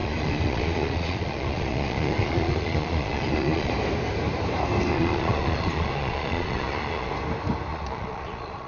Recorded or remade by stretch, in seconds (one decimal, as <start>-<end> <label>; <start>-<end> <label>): 0.0-3.7 remade; 3.7-4.9 recorded; 4.9-7.1 remade; 7.1-7.7 recorded; 7.7-8.7 remade